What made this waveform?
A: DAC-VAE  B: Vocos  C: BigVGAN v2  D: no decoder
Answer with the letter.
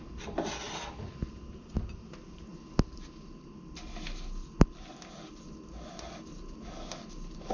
D